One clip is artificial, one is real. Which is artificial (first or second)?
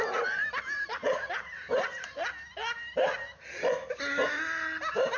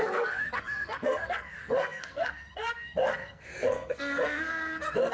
second